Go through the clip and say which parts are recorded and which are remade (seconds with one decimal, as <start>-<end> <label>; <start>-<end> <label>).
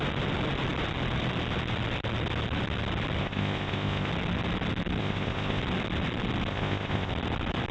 0.0-3.2 recorded; 3.2-4.1 remade; 4.1-5.0 recorded; 5.0-5.6 remade; 5.6-6.5 recorded; 6.5-7.1 remade; 7.1-7.7 recorded